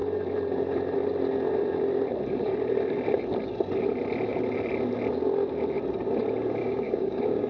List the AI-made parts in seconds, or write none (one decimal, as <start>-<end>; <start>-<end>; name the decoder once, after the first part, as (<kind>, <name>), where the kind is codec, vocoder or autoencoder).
6.6-7.5 (codec, DAC)